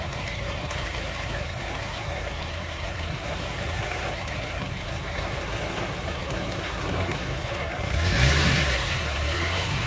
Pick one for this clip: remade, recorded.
remade